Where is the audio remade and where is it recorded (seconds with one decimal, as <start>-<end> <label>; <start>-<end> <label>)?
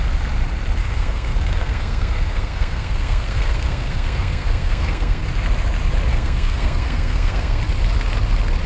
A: 0.0-0.8 recorded; 0.8-5.2 remade; 5.2-6.1 recorded; 6.1-7.6 remade; 7.6-8.7 recorded